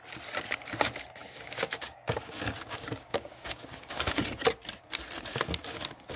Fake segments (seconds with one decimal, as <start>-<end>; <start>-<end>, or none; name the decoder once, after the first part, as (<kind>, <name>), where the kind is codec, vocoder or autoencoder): 1.2-4.2 (codec, DAC)